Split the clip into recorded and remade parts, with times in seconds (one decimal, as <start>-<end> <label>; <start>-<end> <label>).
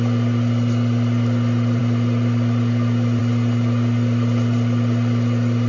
0.0-5.7 recorded